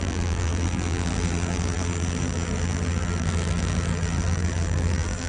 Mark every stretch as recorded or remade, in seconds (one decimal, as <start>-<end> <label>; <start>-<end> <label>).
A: 0.0-5.3 remade